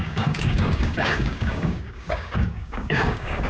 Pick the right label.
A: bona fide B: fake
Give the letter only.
B